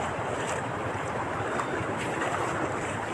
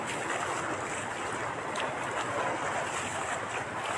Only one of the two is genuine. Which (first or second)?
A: second